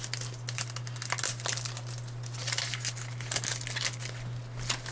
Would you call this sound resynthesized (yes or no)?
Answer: no